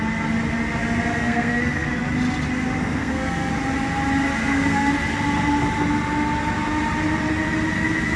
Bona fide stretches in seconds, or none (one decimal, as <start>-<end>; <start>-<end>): 0.0-1.2; 1.9-2.8; 3.5-4.4; 4.9-8.2